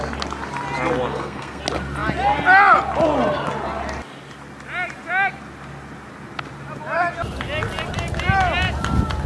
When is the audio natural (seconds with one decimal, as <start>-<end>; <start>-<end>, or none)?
0.0-1.1; 1.6-9.3